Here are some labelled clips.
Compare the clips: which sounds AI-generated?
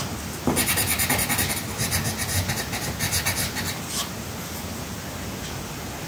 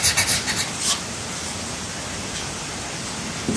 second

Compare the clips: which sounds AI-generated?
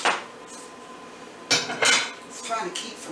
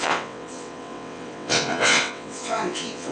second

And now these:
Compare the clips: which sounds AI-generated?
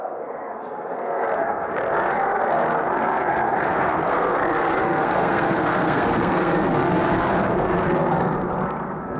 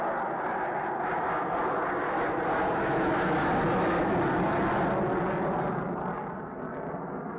first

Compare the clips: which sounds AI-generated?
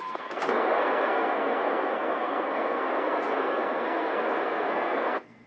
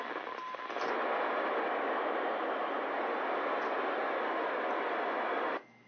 first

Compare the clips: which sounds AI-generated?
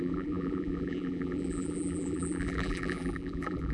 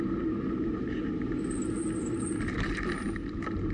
first